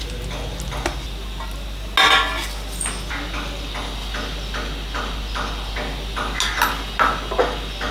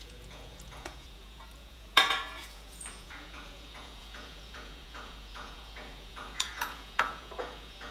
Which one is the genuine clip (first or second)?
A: first